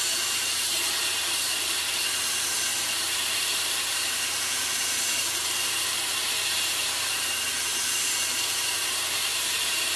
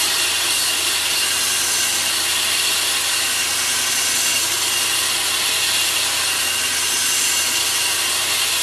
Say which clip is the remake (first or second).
first